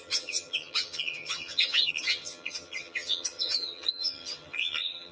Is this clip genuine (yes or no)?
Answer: no